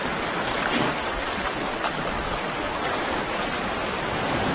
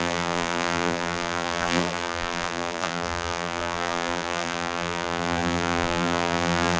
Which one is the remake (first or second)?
second